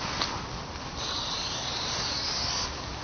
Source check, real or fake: real